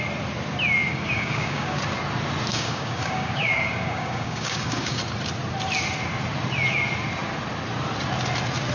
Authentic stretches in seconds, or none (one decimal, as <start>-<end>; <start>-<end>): 0.0-0.8; 1.8-2.5; 5.0-8.7